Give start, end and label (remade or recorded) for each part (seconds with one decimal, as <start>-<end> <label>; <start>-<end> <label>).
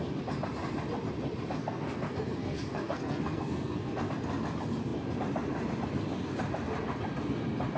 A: 0.0-1.6 recorded; 1.6-4.1 remade; 4.1-7.8 recorded